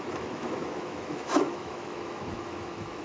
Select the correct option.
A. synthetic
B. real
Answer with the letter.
A